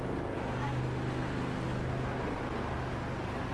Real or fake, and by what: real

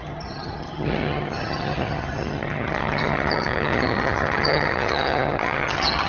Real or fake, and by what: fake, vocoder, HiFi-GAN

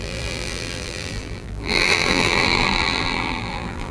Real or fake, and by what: fake, vocoder, BigVGAN v2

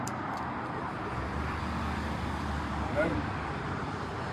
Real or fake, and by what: fake, vocoder, BigVGAN v2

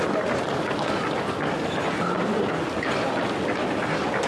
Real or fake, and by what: real